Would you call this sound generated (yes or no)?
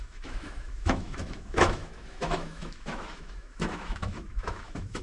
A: yes